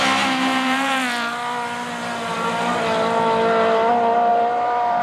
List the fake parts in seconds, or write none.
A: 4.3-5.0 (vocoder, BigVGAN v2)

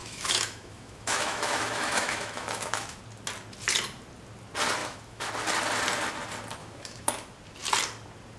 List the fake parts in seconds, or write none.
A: 0.0-3.0 (autoencoder, DAC-VAE); 4.8-5.3; 6.6-7.1

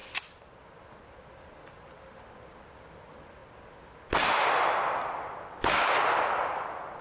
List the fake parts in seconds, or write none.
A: none

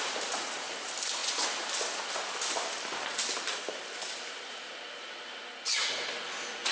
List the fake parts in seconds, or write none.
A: none

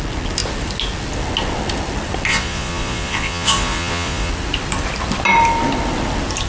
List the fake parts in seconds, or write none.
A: 2.3-4.3 (vocoder, Vocos)

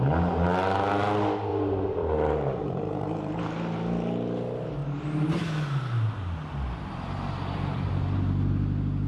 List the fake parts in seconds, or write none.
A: 1.5-3.4 (vocoder, BigVGAN v2)